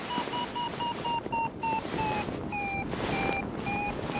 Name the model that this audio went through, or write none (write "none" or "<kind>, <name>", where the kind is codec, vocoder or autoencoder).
vocoder, BigVGAN v2